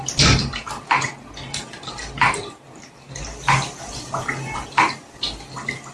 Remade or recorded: recorded